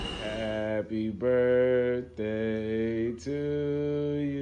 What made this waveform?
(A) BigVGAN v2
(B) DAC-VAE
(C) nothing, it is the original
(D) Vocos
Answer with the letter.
C